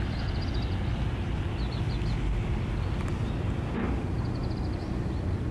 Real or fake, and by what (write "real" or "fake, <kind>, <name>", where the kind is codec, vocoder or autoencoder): real